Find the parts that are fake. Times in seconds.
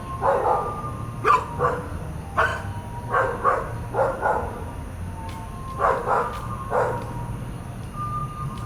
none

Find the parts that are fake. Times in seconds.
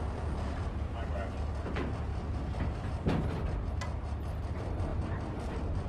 0.0-0.9; 1.5-2.1; 4.5-5.9